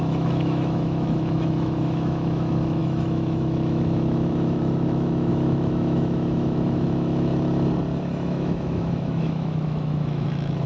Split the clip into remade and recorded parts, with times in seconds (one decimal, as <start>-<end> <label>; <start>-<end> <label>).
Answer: 0.0-7.3 remade; 7.3-8.0 recorded; 8.0-10.7 remade

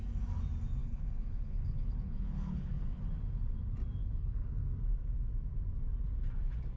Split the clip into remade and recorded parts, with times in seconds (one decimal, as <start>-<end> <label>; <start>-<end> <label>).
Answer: 0.0-0.8 recorded; 0.8-3.0 remade; 3.0-4.0 recorded; 4.0-4.5 remade; 4.5-6.8 recorded

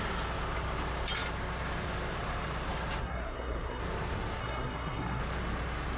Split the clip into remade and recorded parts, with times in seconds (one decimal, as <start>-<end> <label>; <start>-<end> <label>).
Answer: 0.0-3.0 recorded; 3.0-3.8 remade; 3.8-4.4 recorded; 4.4-5.2 remade; 5.2-6.0 recorded

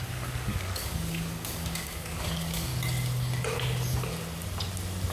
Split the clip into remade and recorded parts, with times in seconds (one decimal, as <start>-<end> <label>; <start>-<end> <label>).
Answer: 0.0-2.7 remade; 2.7-5.1 recorded